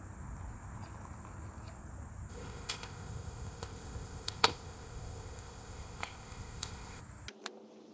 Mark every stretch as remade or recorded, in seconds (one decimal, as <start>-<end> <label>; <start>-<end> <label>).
0.0-2.3 recorded; 2.3-7.0 remade; 7.0-7.9 recorded